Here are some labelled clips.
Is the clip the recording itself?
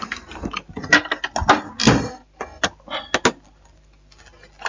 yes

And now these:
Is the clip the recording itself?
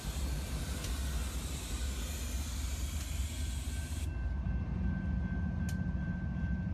yes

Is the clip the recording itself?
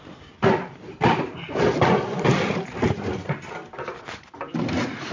yes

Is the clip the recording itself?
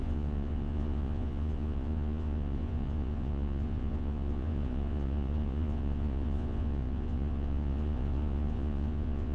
no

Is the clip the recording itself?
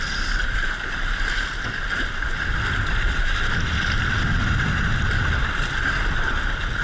yes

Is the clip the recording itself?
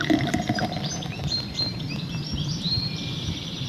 no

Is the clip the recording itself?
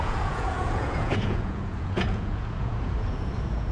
no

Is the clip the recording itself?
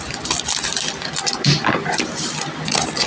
yes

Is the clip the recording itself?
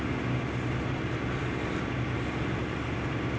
yes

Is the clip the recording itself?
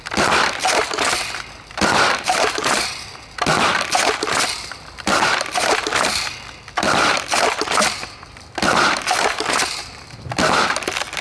no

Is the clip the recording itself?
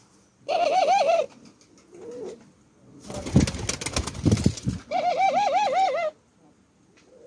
yes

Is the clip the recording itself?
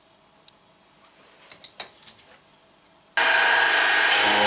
yes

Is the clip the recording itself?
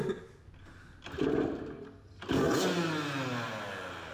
yes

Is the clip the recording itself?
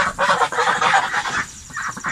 yes